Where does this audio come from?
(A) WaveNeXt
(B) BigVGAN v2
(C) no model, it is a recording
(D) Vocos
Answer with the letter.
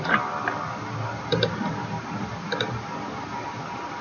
C